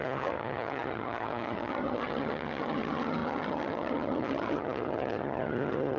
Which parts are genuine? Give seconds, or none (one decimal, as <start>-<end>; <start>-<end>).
none